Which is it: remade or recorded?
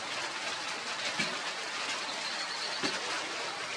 recorded